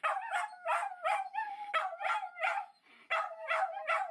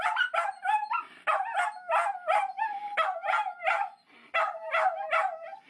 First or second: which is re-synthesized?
first